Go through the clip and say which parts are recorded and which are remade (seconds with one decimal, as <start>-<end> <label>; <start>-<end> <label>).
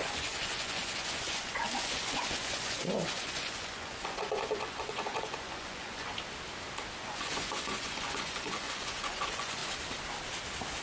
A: 0.0-6.1 remade; 6.1-7.0 recorded; 7.0-9.6 remade; 9.6-10.8 recorded